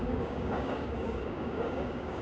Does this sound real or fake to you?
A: fake